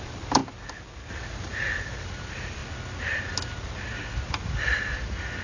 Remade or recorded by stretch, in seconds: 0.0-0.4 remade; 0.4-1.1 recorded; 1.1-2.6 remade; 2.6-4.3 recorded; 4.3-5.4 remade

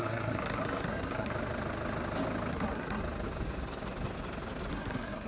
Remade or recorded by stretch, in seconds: 0.0-1.3 remade; 1.3-2.5 recorded; 2.5-3.0 remade; 3.0-4.7 recorded; 4.7-5.3 remade